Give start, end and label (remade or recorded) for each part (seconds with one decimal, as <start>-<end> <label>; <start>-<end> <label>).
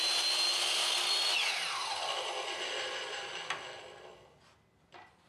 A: 0.0-5.3 recorded